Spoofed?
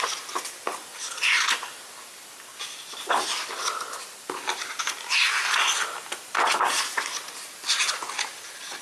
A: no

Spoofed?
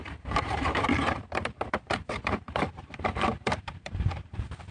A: yes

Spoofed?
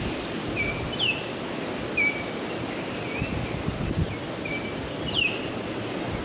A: no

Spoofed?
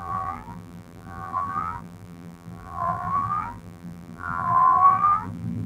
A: yes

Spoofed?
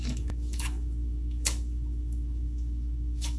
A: yes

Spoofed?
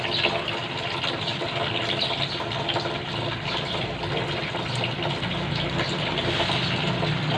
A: no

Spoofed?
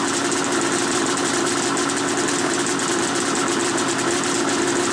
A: no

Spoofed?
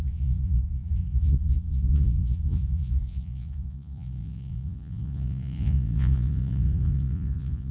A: yes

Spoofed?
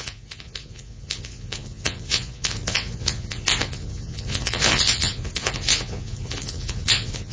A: yes